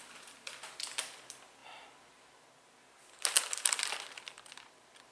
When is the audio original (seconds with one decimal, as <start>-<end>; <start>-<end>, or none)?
0.0-5.1